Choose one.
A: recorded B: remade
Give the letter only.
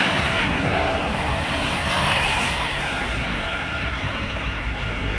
B